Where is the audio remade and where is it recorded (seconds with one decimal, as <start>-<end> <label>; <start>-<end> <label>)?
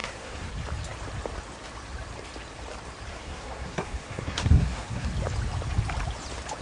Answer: 0.0-0.5 remade; 0.5-3.1 recorded; 3.1-5.1 remade; 5.1-6.6 recorded